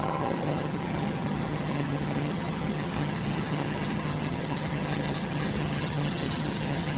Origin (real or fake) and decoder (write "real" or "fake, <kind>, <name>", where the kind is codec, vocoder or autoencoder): fake, vocoder, HiFi-GAN